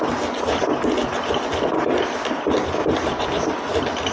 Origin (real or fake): real